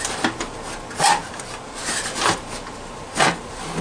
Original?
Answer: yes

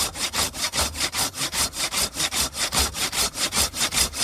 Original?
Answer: no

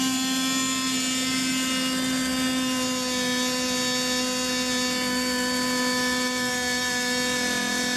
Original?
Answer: yes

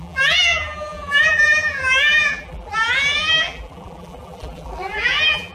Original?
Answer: no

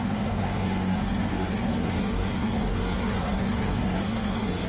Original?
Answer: no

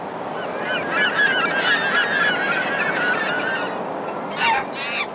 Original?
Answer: yes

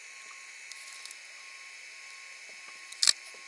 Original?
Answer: yes